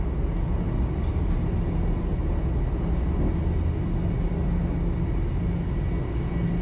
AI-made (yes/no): no